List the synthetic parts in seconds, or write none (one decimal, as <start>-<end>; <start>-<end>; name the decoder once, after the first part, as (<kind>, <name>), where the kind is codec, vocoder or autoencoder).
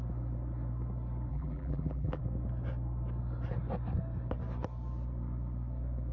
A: 1.3-2.2 (vocoder, BigVGAN v2)